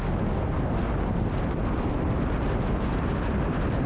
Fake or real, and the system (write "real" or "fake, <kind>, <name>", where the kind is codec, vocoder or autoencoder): real